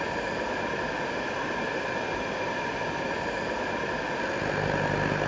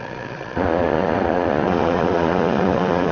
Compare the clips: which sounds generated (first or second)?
second